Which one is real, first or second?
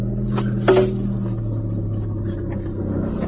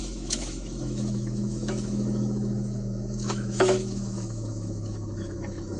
first